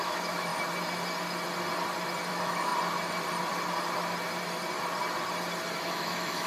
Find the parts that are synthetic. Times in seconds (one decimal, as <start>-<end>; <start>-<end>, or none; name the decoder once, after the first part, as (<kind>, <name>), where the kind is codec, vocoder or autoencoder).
0.0-0.5 (autoencoder, DAC-VAE); 2.3-2.7; 5.8-6.5